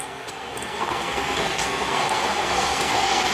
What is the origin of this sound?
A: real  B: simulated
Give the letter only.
B